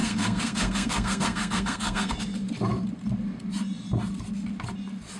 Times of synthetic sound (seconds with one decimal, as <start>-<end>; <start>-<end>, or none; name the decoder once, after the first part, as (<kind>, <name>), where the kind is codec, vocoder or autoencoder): 0.0-2.1 (codec, SNAC)